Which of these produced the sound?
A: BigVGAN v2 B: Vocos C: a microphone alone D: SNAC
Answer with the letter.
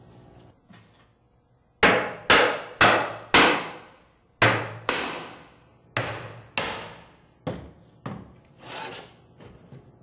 C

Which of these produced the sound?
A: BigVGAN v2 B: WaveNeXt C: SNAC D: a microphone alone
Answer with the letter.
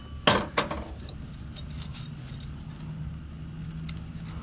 D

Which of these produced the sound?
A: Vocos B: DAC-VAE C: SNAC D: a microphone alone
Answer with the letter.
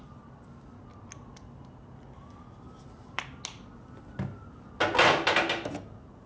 D